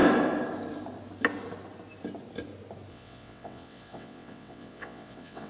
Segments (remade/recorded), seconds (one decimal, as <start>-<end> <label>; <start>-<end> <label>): 0.0-2.9 recorded; 2.9-5.5 remade